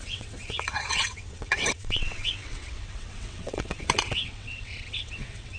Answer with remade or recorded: remade